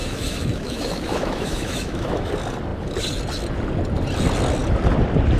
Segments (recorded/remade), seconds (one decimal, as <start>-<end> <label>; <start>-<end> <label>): 0.0-2.3 remade; 2.3-5.4 recorded